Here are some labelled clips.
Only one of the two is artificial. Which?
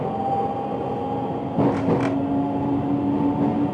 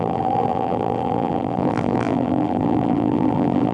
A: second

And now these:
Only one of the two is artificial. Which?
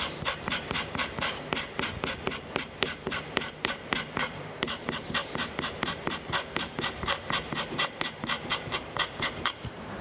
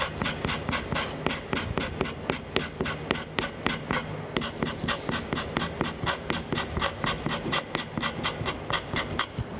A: first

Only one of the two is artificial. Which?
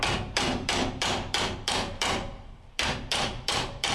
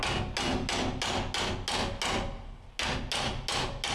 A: first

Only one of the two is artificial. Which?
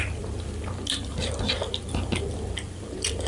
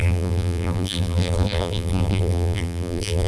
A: second